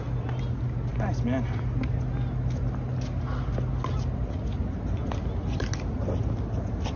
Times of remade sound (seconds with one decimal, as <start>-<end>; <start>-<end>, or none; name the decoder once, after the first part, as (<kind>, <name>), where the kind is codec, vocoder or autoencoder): none